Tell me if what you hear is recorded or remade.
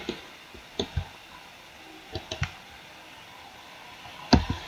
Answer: recorded